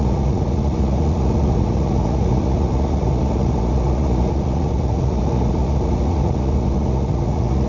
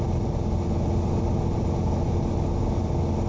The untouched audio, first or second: second